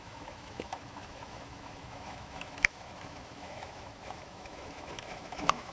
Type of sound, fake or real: fake